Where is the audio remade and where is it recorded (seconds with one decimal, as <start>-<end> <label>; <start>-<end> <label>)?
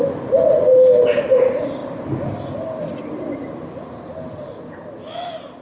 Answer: 0.0-5.6 recorded